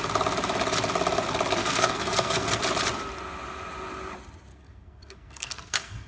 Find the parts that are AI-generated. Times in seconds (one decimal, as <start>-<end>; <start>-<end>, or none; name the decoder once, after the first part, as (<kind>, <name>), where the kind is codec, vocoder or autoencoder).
1.6-2.6 (codec, SNAC); 4.5-6.1